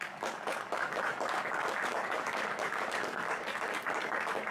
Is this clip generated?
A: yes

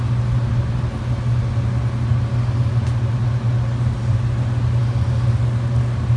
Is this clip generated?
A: no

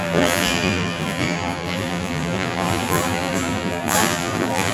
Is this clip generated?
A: yes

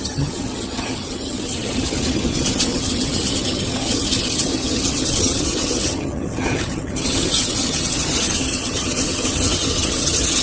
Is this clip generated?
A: yes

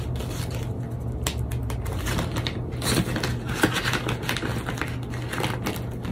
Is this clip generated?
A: no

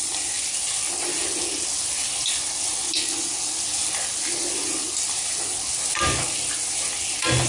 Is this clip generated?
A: no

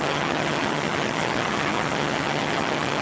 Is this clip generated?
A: yes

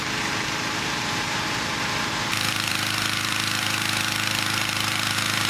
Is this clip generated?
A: yes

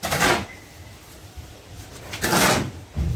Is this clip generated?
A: yes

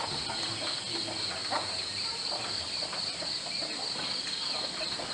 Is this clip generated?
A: no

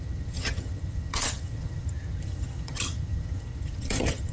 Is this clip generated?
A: yes